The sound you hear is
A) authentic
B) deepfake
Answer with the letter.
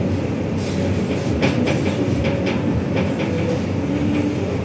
A